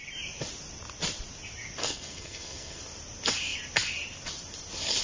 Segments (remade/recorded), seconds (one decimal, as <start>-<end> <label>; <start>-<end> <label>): 0.0-1.8 recorded; 1.8-2.8 remade; 2.8-5.0 recorded